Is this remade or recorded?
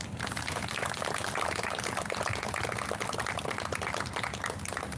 recorded